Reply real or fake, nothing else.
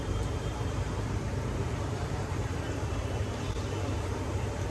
fake